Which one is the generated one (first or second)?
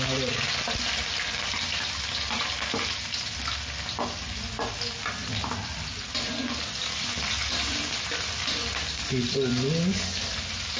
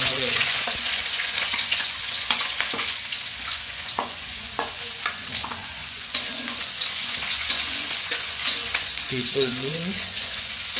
second